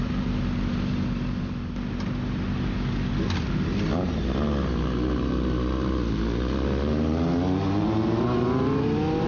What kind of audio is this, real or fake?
real